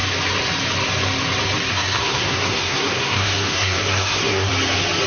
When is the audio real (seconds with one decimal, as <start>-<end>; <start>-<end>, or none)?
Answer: 0.0-1.7; 4.5-5.1

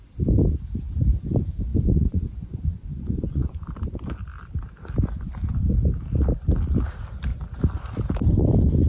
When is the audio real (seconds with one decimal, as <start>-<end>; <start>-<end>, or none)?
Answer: 0.0-1.7; 3.6-8.9

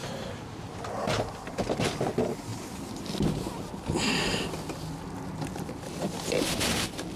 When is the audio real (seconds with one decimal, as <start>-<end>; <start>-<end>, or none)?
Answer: 2.5-5.6